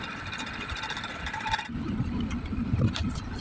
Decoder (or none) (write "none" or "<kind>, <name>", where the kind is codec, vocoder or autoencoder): none